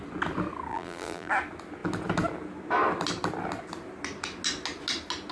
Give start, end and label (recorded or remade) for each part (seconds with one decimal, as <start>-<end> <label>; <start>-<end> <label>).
0.0-0.7 recorded; 0.7-1.3 remade; 1.3-5.3 recorded